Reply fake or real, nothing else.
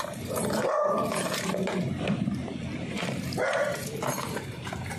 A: fake